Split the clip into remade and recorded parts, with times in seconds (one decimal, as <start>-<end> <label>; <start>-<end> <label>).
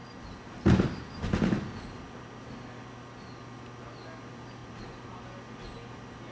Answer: 0.0-4.6 recorded; 4.6-5.2 remade; 5.2-6.3 recorded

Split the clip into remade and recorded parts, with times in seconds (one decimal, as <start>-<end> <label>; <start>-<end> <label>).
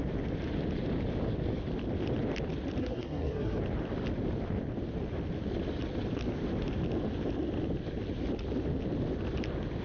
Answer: 0.0-2.8 recorded; 2.8-3.6 remade; 3.6-9.8 recorded